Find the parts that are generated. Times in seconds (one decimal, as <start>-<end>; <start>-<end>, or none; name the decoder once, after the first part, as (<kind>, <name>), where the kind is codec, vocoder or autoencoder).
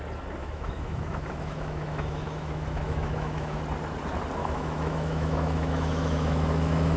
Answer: 0.4-3.6 (autoencoder, DAC-VAE); 4.4-7.0